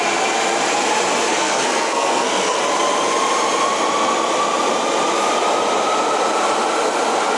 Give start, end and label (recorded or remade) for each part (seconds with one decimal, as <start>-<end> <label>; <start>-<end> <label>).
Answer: 0.0-1.3 recorded; 1.3-2.6 remade; 2.6-7.4 recorded